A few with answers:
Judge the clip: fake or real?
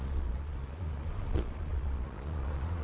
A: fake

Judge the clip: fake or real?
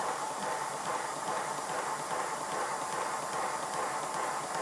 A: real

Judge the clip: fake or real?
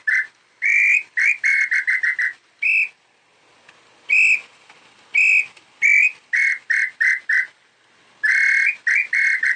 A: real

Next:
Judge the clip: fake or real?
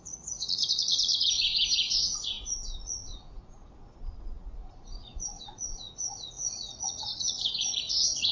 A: fake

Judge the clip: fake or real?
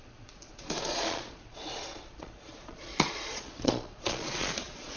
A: fake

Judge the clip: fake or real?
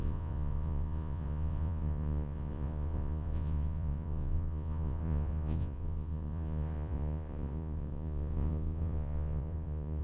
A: fake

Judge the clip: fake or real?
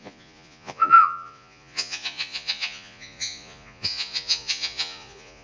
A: fake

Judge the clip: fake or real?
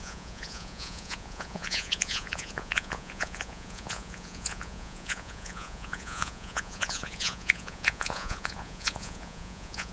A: fake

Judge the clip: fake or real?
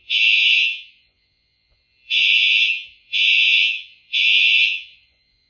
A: fake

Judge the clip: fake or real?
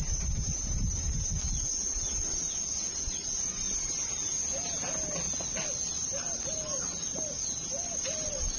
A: real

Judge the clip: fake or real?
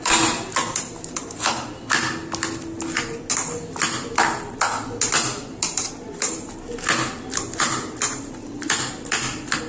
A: real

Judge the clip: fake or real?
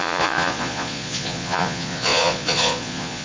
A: fake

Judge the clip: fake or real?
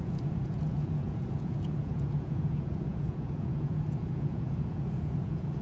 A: fake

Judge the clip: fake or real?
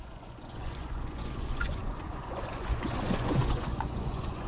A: fake